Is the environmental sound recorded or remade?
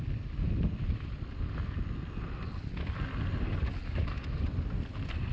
recorded